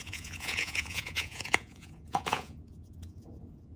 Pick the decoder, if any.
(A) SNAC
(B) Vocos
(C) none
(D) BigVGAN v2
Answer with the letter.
B